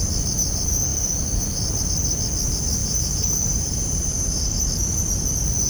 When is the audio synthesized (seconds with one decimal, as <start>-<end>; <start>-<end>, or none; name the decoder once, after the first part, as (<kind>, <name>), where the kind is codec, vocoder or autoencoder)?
2.8-4.6 (vocoder, BigVGAN v2)